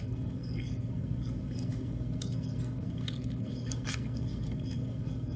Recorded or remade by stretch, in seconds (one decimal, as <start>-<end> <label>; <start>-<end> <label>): 0.0-5.4 remade